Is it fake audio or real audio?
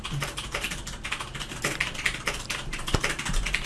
real